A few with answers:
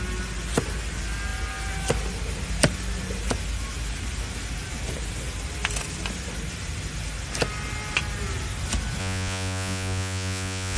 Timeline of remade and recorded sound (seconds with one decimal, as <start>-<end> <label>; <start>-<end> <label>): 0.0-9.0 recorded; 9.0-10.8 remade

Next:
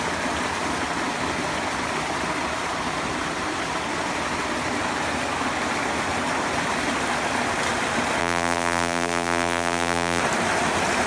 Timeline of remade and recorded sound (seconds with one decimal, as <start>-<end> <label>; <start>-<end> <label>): 0.0-8.2 recorded; 8.2-10.2 remade; 10.2-11.1 recorded

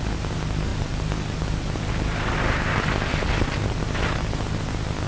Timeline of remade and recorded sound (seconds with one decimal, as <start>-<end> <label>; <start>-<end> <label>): 0.0-5.1 recorded

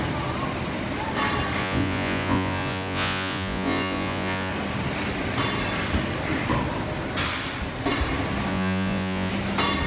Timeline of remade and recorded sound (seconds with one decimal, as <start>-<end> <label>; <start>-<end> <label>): 0.0-1.6 recorded; 1.6-4.5 remade; 4.5-8.5 recorded; 8.5-9.3 remade; 9.3-9.9 recorded

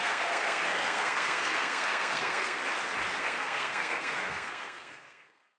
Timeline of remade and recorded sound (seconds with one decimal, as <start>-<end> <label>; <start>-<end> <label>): 0.0-2.6 remade; 2.6-3.2 recorded; 3.2-5.6 remade